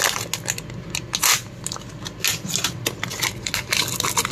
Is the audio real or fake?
real